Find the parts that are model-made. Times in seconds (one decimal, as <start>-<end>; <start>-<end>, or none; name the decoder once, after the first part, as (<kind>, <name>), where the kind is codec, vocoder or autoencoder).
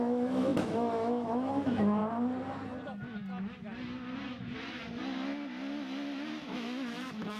0.0-2.0 (autoencoder, DAC-VAE); 6.4-7.4